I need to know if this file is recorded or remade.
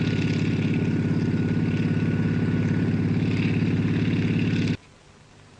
recorded